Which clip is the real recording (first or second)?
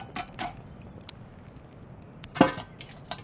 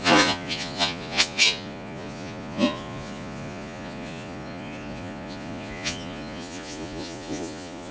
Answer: first